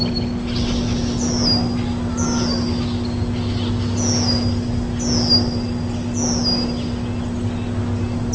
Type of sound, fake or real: real